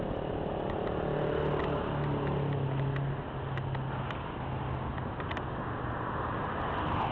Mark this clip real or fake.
real